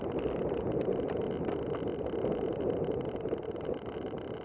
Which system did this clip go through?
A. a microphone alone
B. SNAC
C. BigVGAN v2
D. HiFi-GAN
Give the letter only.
A